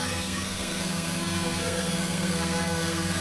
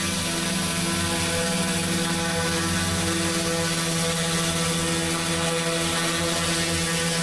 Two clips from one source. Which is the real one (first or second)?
second